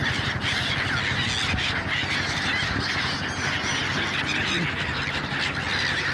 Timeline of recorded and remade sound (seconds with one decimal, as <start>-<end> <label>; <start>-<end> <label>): 0.0-6.1 recorded